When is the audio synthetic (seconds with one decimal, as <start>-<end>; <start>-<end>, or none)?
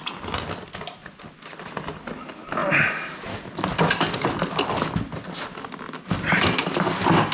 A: none